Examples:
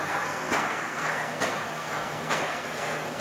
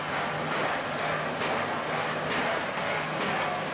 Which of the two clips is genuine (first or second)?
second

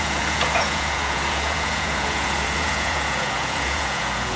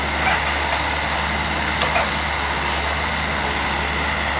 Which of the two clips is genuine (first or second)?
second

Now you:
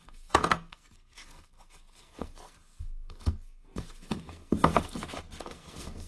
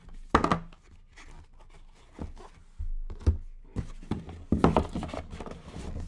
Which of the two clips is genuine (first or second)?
second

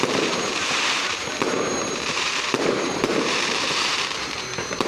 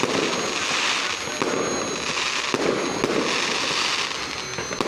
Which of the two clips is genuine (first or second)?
second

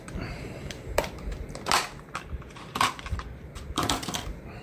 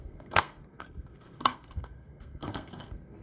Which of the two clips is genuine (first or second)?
first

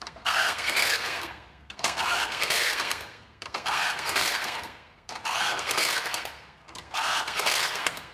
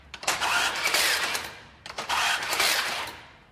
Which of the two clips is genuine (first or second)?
second